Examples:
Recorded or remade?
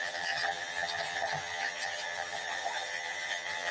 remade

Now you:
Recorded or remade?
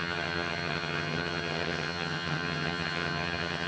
remade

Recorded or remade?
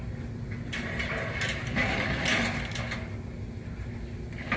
recorded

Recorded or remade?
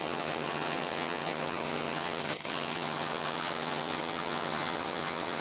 remade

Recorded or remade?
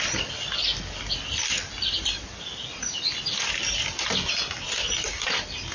recorded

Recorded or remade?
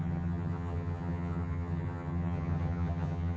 remade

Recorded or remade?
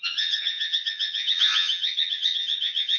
remade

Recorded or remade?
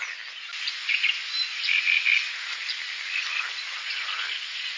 recorded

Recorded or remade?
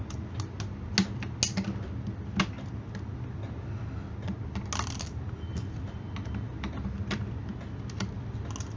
recorded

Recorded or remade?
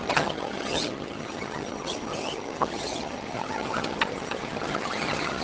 remade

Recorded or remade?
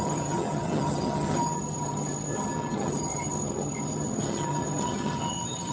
remade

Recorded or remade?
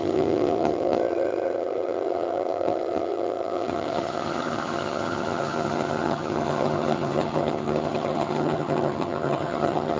remade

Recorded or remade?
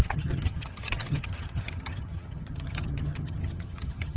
remade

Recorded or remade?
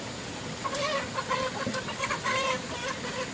recorded